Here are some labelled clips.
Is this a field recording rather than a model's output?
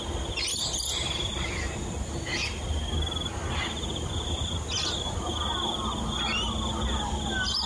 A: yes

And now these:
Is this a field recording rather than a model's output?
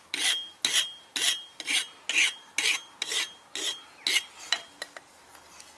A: yes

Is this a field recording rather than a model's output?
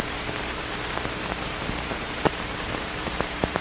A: no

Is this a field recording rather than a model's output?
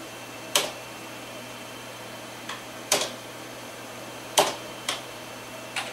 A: no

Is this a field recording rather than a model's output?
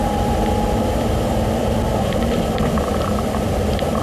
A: no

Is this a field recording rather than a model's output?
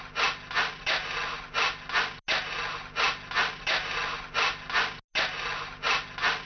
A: yes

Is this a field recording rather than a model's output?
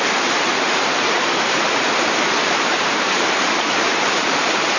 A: no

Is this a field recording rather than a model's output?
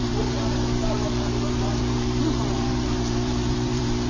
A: no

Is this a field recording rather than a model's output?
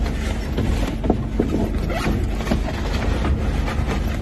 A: yes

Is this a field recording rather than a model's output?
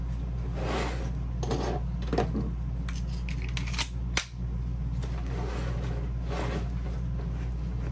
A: yes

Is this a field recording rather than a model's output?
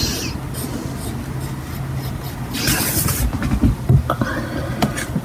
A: yes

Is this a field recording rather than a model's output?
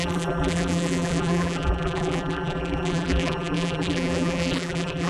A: no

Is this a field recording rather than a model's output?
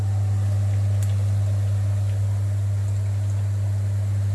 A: yes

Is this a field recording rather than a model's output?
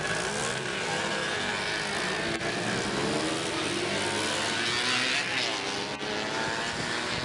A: yes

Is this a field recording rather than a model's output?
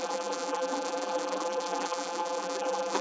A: no